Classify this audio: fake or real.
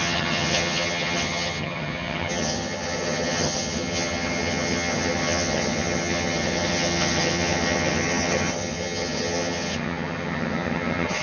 fake